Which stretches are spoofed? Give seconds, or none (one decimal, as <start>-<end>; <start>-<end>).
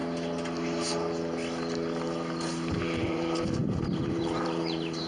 2.7-5.1